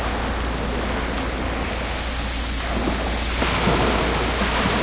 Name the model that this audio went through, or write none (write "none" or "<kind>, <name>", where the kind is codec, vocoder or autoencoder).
none